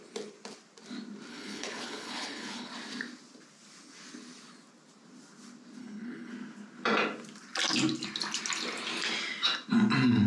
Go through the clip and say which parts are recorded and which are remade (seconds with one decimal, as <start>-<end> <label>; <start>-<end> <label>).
0.0-1.3 recorded; 1.3-2.7 remade; 2.7-5.8 recorded; 5.8-6.3 remade; 6.3-10.3 recorded